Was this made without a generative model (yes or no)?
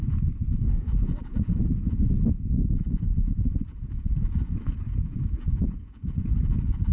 no